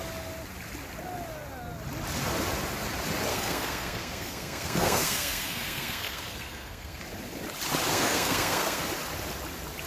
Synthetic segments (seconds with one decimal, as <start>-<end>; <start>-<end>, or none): 3.3-7.0; 7.9-8.8